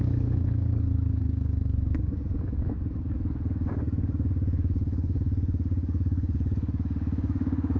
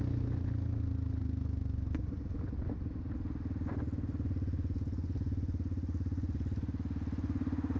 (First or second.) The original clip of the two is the second